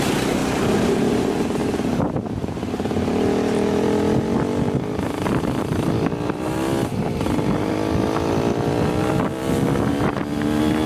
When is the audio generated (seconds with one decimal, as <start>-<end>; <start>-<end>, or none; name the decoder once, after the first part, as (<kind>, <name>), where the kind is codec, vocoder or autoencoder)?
0.4-1.2 (vocoder, BigVGAN v2)